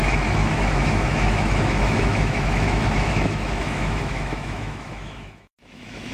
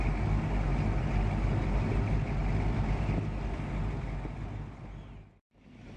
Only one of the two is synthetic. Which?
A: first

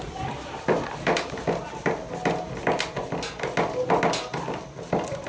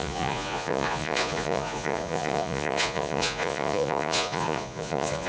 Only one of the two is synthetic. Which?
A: second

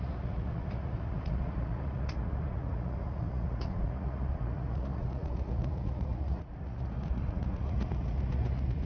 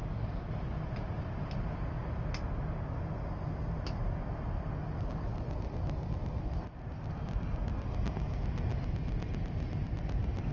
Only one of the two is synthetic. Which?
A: first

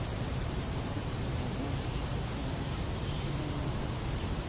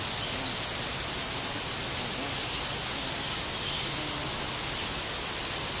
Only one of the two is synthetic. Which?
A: first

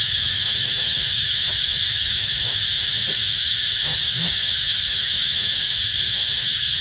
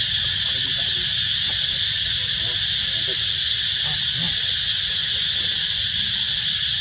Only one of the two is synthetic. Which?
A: first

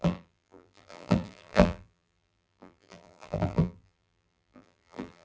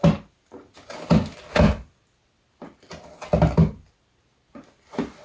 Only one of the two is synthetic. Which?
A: first